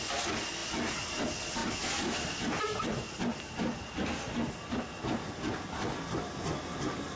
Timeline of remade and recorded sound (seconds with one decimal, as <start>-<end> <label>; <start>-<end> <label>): 0.0-7.2 recorded